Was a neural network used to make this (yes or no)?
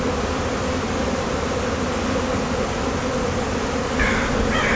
no